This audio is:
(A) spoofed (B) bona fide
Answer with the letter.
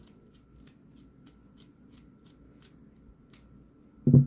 B